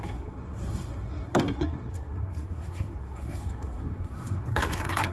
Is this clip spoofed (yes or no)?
yes